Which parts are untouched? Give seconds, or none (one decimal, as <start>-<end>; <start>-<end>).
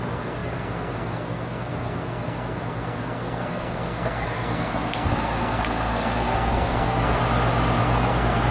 7.2-7.8